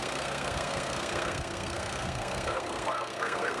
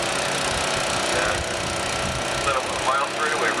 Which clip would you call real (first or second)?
second